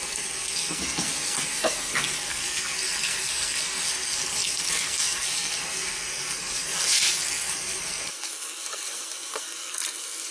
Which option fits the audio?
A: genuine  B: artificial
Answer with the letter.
B